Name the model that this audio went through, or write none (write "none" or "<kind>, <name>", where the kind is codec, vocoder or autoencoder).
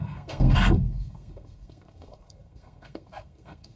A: codec, SNAC